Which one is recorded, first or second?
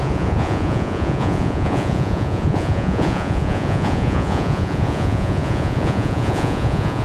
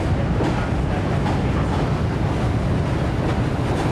second